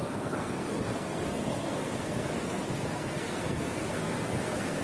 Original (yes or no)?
no